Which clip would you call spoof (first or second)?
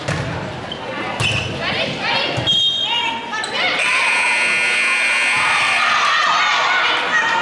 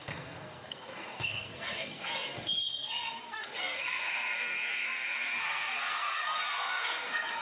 second